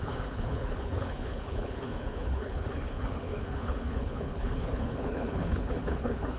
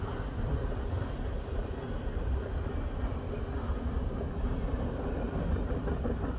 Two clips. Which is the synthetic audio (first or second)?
first